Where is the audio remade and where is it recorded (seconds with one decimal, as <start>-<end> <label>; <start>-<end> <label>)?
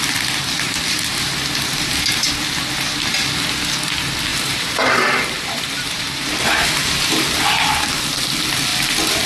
0.0-4.3 recorded; 4.3-7.4 remade; 7.4-9.3 recorded